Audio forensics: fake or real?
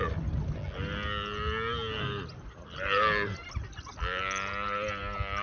real